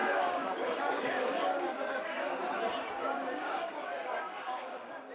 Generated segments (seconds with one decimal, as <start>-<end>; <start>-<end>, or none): 0.0-2.4; 3.0-5.1